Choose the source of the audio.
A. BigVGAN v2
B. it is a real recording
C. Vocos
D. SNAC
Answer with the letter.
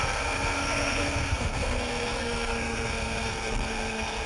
D